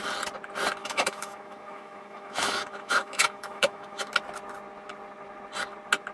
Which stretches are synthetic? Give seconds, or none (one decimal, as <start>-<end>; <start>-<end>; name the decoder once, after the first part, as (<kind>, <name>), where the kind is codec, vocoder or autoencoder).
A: 0.8-4.1 (autoencoder, DAC-VAE)